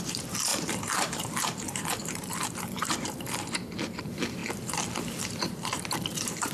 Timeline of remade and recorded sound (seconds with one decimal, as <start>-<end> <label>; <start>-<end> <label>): 0.0-4.4 remade; 4.4-5.2 recorded; 5.2-6.5 remade